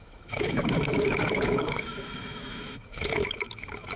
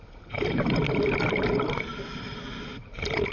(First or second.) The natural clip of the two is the second